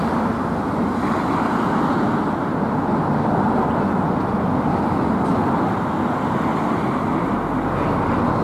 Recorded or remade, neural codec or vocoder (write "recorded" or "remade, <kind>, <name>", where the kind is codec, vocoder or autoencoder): recorded